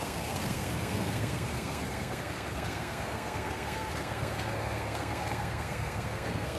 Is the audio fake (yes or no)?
yes